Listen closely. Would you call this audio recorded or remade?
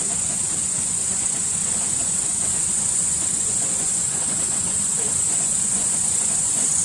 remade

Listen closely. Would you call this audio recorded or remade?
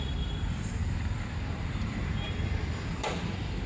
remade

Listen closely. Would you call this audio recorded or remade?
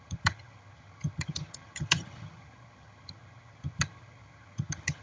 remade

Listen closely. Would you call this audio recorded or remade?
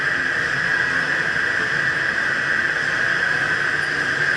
recorded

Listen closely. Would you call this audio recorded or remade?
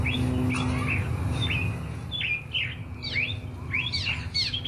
recorded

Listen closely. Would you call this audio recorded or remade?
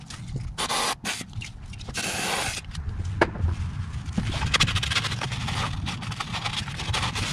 recorded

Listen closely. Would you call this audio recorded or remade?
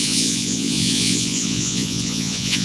remade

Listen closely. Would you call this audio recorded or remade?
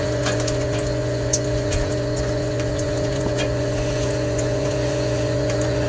remade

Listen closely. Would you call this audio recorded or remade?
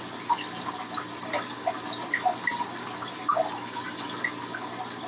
recorded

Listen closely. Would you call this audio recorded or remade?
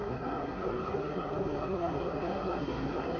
remade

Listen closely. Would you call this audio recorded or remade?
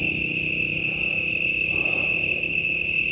recorded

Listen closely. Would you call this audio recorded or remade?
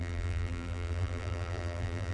remade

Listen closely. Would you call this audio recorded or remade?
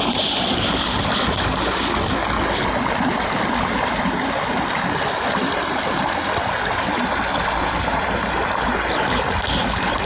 recorded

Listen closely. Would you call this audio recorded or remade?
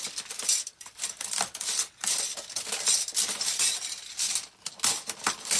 recorded